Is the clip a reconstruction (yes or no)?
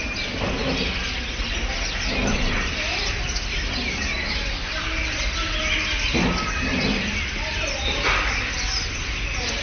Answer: no